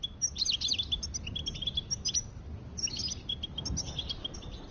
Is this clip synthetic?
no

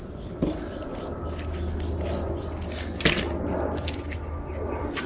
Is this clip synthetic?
no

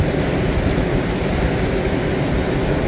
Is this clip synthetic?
no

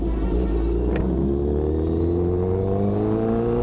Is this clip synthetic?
no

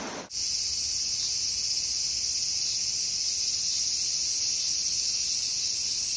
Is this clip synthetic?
no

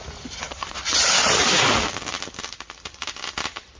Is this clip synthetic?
no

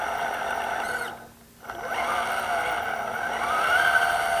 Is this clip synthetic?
no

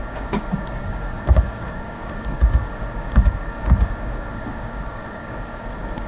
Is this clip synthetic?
yes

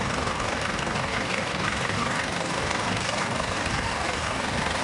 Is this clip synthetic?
yes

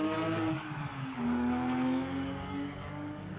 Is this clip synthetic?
yes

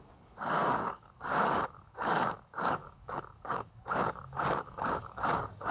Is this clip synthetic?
yes